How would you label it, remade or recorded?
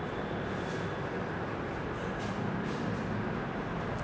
recorded